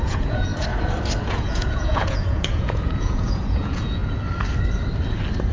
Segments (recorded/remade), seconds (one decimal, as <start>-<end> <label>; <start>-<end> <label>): 0.0-0.5 remade; 0.5-1.2 recorded; 1.2-4.0 remade; 4.0-5.5 recorded